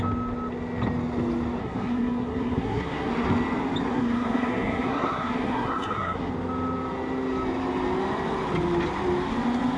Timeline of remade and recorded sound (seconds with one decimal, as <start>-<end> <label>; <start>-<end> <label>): 0.0-1.6 recorded; 1.6-3.1 remade; 3.1-3.9 recorded; 3.9-6.3 remade; 6.3-9.8 recorded